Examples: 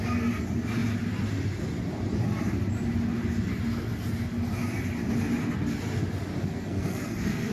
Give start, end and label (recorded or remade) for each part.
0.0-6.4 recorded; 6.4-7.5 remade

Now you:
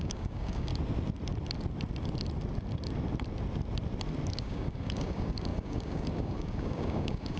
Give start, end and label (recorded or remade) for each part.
0.0-0.7 remade; 0.7-4.3 recorded; 4.3-7.4 remade

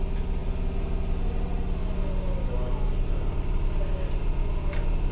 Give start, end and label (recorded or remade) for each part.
0.0-5.1 recorded

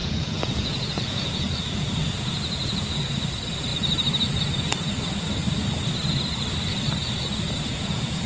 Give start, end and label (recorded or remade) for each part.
0.0-3.2 remade; 3.2-7.7 recorded; 7.7-8.3 remade